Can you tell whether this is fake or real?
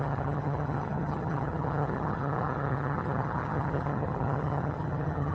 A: fake